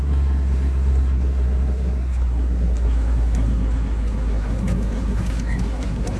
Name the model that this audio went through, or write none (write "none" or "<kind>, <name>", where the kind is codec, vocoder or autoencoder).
codec, SNAC